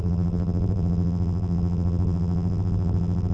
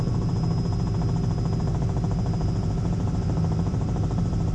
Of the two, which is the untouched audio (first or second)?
second